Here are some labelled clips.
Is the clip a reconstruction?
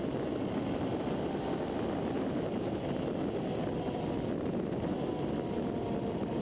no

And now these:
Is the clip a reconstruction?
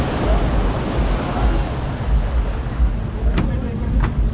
no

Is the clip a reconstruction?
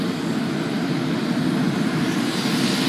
no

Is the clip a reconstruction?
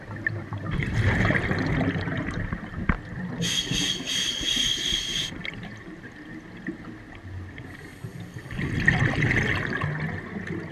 no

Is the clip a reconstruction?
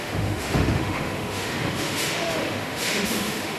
yes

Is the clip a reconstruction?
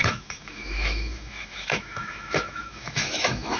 yes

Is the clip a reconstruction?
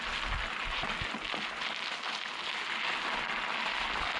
no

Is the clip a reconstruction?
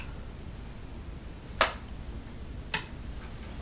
no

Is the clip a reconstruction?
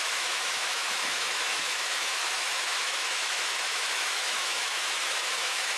yes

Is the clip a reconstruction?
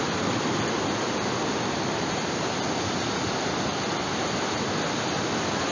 no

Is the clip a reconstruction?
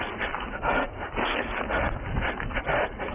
no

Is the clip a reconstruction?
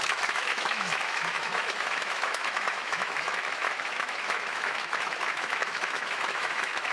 yes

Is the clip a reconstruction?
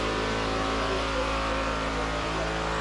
no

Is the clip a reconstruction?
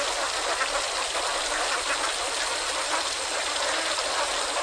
no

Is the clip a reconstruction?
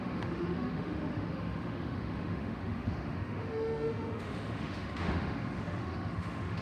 yes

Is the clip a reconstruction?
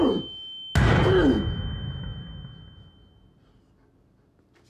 no